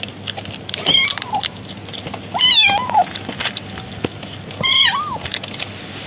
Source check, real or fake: real